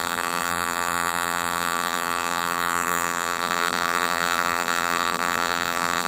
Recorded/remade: remade